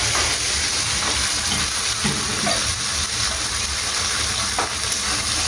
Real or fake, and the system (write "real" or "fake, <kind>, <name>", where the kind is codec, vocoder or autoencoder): real